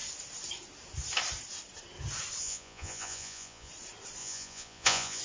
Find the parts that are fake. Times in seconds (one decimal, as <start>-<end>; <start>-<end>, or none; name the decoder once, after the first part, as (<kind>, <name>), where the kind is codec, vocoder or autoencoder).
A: 2.4-3.7 (vocoder, Vocos); 4.2-5.2

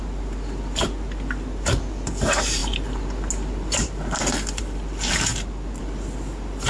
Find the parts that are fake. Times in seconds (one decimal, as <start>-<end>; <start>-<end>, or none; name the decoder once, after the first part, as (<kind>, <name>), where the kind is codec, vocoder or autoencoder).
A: none

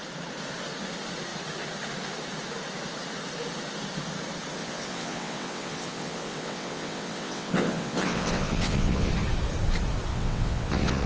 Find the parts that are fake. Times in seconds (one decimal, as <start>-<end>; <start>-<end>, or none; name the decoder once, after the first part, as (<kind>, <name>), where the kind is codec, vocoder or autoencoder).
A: 4.6-9.1 (vocoder, WaveNeXt); 10.1-11.1

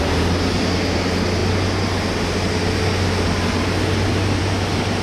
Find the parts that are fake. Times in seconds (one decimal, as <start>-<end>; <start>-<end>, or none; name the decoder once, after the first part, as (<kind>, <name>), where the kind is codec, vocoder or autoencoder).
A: none

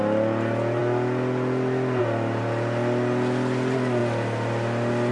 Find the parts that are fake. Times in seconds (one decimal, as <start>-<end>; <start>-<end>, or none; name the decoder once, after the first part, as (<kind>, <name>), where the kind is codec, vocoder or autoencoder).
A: none

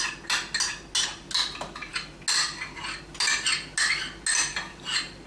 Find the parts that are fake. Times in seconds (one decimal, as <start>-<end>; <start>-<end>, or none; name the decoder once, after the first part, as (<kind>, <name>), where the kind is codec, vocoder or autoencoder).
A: none

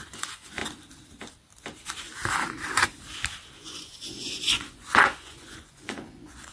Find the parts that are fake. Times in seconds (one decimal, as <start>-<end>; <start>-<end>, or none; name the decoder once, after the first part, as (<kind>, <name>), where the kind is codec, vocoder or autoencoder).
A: 0.0-0.6 (vocoder, Vocos); 3.5-6.5

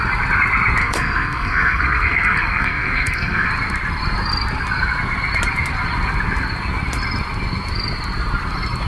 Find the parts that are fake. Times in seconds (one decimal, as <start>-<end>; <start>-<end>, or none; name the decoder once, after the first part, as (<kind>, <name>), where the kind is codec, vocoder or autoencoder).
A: 0.8-3.5 (codec, SNAC)